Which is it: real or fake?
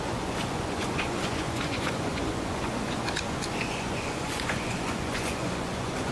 fake